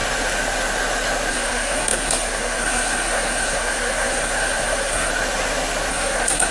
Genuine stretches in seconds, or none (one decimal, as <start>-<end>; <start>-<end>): 0.0-1.3; 5.1-5.9